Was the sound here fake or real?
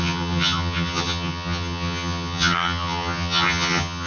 fake